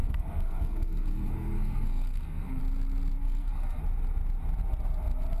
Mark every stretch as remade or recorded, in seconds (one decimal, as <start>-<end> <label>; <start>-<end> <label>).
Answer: 0.0-2.6 remade; 2.6-3.2 recorded; 3.2-3.8 remade; 3.8-5.4 recorded